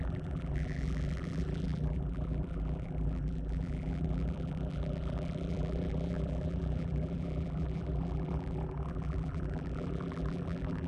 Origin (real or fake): fake